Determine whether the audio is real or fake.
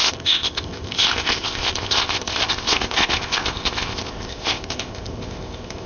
fake